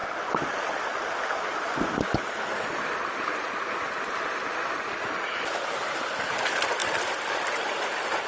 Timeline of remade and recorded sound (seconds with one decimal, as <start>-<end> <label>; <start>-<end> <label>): 0.0-6.8 recorded; 6.8-8.3 remade